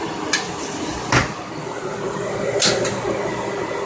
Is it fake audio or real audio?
real